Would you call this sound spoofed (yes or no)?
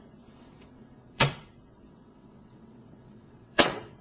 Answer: yes